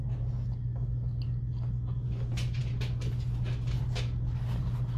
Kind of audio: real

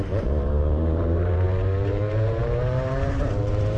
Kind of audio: fake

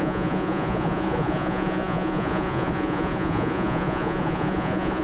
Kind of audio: fake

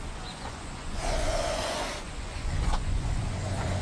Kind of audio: fake